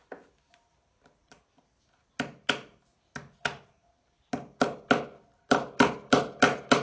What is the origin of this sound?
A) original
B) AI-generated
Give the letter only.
A